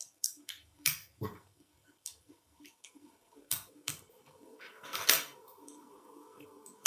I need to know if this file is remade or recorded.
remade